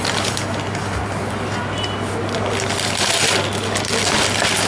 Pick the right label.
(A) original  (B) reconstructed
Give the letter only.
A